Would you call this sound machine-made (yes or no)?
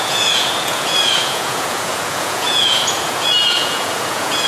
yes